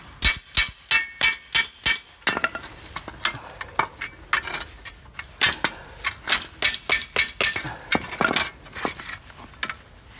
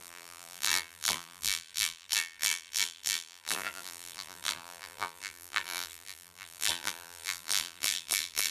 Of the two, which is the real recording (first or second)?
first